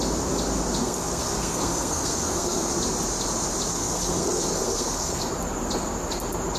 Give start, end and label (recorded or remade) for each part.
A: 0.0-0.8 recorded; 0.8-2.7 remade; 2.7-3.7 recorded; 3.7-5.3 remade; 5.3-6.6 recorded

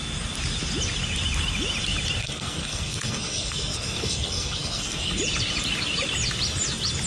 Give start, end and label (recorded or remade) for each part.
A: 0.0-2.2 recorded; 2.2-5.2 remade; 5.2-7.1 recorded

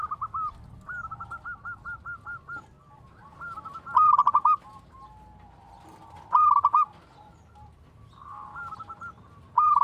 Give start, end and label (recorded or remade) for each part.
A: 0.0-9.8 recorded

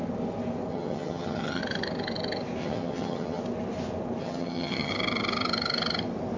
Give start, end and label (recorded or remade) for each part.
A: 0.0-0.7 recorded; 0.7-1.6 remade; 1.6-2.6 recorded; 2.6-3.4 remade; 3.4-4.2 recorded; 4.2-4.9 remade; 4.9-6.4 recorded

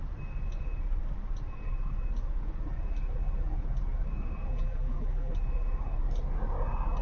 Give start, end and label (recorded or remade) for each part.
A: 0.0-4.5 recorded; 4.5-5.3 remade; 5.3-7.0 recorded

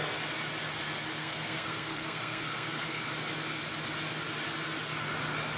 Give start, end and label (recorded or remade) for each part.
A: 0.0-1.1 recorded; 1.1-3.1 remade; 3.1-5.6 recorded

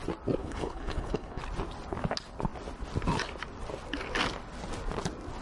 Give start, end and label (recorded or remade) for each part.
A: 0.0-0.4 recorded; 0.4-1.4 remade; 1.4-5.4 recorded

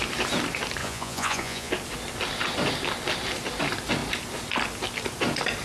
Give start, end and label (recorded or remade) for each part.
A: 0.0-0.8 recorded; 0.8-1.7 remade; 1.7-5.6 recorded